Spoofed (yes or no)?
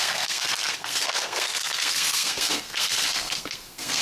yes